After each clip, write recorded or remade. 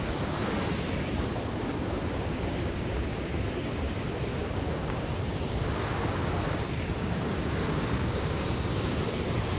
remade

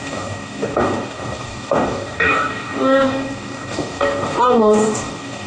remade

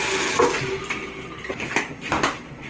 recorded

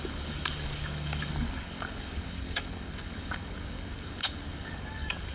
remade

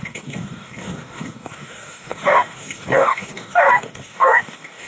remade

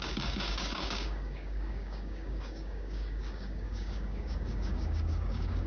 remade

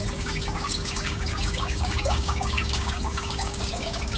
remade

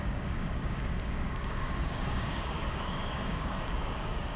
remade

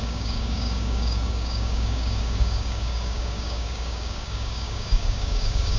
remade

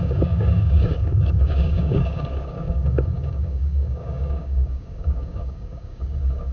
remade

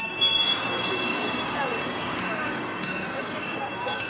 remade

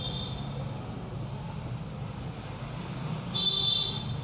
recorded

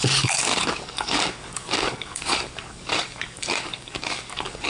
remade